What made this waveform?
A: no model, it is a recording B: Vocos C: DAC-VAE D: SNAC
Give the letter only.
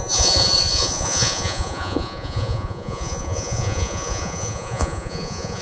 B